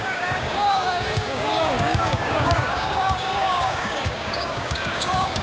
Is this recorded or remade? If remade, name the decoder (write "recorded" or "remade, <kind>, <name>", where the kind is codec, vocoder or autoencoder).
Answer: remade, codec, DAC